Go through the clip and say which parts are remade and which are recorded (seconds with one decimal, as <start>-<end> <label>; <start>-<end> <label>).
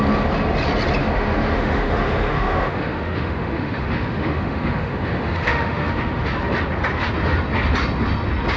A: 0.0-1.0 recorded; 1.0-6.2 remade; 6.2-8.6 recorded